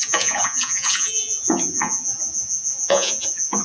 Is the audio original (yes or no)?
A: no